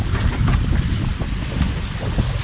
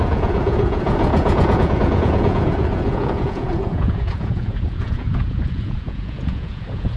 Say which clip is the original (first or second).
first